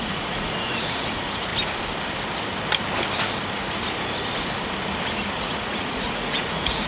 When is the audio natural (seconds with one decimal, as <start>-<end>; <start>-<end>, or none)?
1.5-5.4